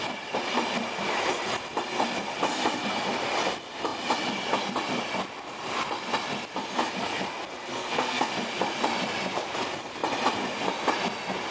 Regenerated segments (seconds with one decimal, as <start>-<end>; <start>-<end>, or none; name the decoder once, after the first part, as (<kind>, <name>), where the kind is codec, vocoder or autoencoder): 7.8-8.3 (codec, SNAC)